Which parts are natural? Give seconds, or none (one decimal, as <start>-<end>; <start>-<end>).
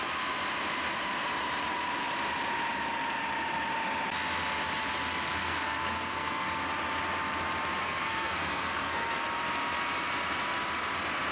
0.0-5.4; 6.6-7.8; 9.2-11.3